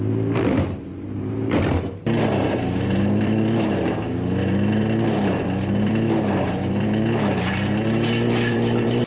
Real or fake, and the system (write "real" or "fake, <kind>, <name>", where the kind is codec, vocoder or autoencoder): fake, vocoder, BigVGAN v2